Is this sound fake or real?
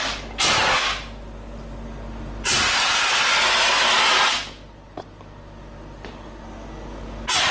real